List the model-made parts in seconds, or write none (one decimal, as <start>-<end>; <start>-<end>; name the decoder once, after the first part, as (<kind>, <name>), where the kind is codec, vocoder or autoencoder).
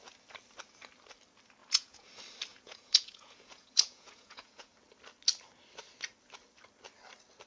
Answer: 1.6-2.1 (vocoder, Vocos); 2.5-4.7